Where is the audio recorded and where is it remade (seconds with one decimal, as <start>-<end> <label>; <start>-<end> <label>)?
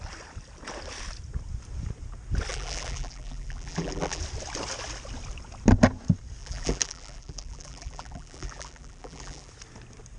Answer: 0.0-2.5 recorded; 2.5-4.2 remade; 4.2-6.4 recorded; 6.4-9.5 remade; 9.5-10.2 recorded